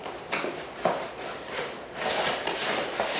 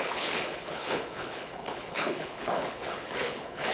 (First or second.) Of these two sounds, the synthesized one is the second